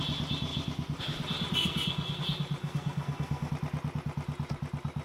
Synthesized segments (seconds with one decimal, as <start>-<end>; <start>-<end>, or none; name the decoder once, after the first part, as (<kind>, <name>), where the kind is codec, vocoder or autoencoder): 1.6-2.2 (codec, SNAC); 2.6-3.5